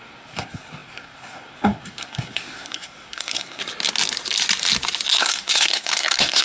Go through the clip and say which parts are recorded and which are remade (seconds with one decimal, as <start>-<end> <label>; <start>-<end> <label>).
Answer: 0.0-3.6 remade; 3.6-5.2 recorded; 5.2-6.4 remade